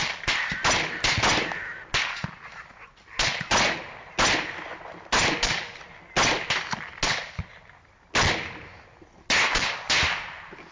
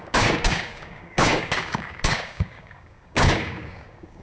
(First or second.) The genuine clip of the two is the first